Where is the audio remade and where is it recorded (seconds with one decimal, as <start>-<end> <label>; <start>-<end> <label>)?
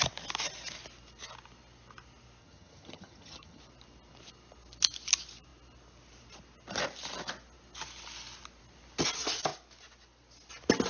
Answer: 0.0-2.4 recorded; 2.4-3.6 remade; 3.6-10.9 recorded